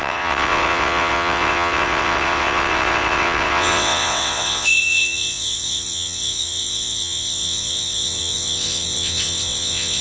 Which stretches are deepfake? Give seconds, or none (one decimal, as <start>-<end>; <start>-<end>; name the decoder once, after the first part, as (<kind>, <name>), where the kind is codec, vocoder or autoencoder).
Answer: 0.0-10.0 (vocoder, WaveNeXt)